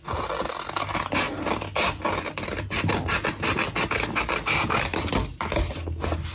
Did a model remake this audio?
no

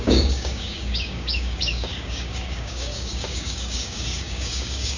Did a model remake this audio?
yes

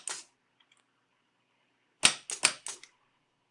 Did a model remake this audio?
no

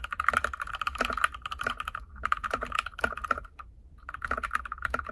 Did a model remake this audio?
yes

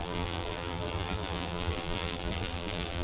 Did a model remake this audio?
yes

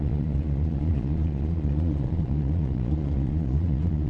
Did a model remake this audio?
yes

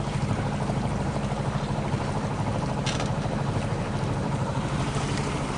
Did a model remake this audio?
yes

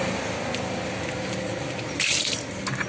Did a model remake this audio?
no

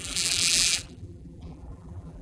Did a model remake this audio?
yes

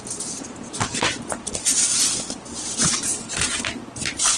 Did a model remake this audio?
no